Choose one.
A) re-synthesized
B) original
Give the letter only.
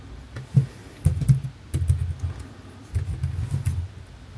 B